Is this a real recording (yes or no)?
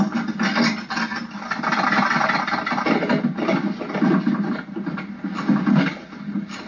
yes